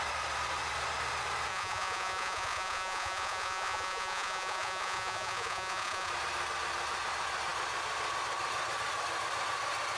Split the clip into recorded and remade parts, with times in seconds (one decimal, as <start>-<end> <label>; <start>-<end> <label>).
0.0-1.5 recorded; 1.5-6.1 remade; 6.1-10.0 recorded